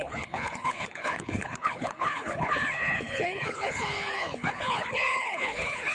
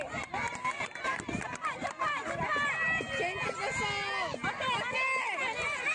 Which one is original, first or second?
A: second